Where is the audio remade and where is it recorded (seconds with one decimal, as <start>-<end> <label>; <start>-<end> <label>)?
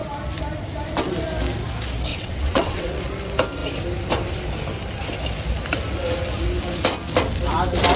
0.0-2.1 recorded; 2.1-3.0 remade; 3.0-8.0 recorded